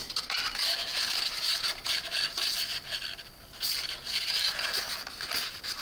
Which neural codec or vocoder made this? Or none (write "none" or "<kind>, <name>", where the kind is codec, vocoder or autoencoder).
none